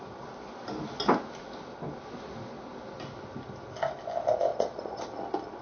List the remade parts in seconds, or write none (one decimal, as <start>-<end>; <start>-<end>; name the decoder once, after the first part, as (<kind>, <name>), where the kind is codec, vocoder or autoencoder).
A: 4.5-5.0 (vocoder, Vocos)